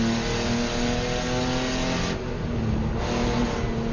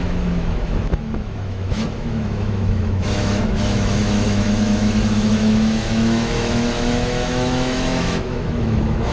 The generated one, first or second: second